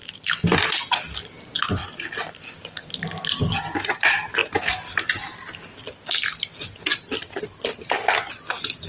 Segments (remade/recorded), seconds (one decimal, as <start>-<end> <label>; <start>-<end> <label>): 0.0-8.9 recorded